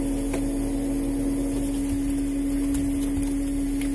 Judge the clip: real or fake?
real